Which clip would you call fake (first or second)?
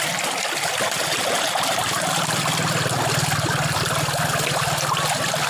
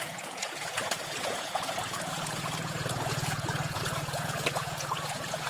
second